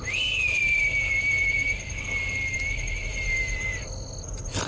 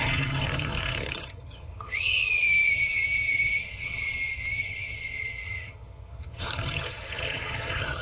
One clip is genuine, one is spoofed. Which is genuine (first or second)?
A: first